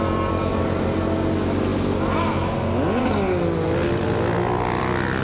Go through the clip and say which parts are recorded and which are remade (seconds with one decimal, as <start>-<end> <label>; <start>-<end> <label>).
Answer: 0.0-5.2 recorded